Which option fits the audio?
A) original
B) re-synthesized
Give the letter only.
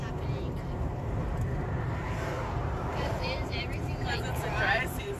B